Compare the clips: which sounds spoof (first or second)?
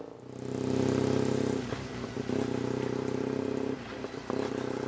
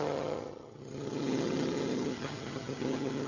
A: second